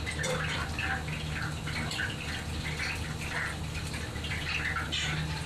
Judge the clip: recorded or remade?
recorded